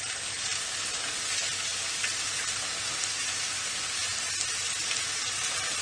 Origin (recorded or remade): recorded